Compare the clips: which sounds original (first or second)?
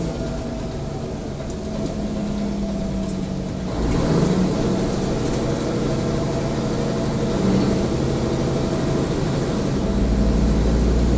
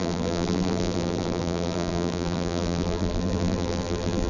first